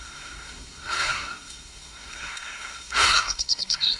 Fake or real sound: fake